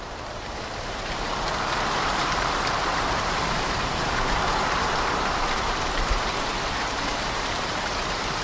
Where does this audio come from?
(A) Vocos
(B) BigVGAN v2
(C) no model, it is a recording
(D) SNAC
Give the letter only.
B